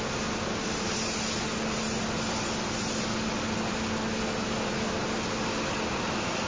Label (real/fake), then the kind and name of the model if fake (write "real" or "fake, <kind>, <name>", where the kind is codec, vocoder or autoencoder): real